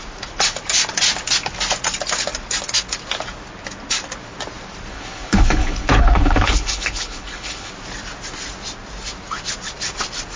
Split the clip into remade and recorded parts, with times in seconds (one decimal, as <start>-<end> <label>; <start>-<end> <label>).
0.0-4.9 recorded; 4.9-7.7 remade; 7.7-10.4 recorded